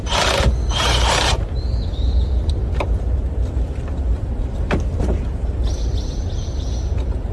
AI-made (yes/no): yes